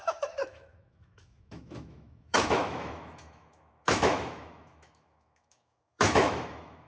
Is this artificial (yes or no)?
yes